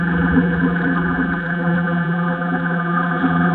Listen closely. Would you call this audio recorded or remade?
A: remade